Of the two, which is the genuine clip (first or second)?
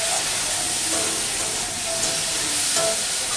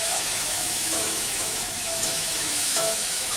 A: first